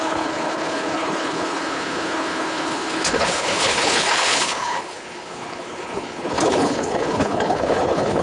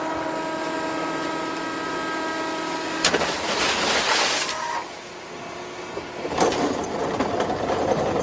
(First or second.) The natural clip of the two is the second